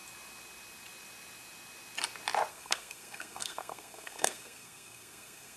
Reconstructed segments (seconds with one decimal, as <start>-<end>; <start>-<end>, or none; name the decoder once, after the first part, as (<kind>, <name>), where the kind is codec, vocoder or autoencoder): 2.5-5.6 (codec, SNAC)